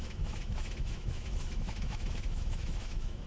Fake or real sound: fake